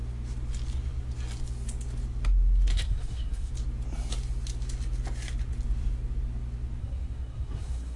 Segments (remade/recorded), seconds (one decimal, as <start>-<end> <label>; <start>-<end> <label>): 0.0-2.7 recorded; 2.7-3.5 remade; 3.5-6.8 recorded; 6.8-8.0 remade